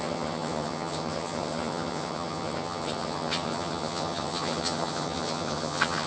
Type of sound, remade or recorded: remade